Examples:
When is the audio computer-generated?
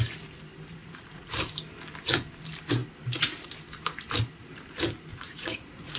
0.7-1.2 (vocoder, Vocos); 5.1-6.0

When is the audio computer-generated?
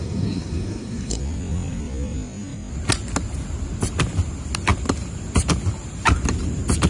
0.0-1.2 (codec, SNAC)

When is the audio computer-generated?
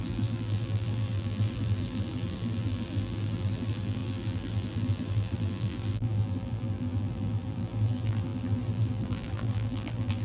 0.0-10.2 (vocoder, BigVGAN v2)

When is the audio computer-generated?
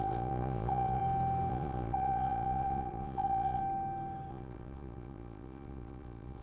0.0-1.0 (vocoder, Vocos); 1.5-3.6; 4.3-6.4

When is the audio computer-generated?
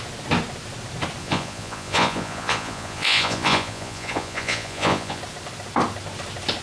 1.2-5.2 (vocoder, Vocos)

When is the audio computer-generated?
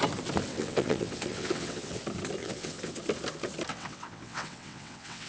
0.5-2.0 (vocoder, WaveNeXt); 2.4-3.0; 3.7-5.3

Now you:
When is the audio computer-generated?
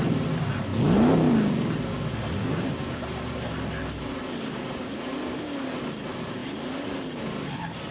2.4-3.0 (codec, DAC)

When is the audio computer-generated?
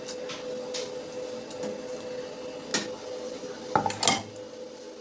none